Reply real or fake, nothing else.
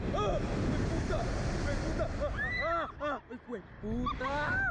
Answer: real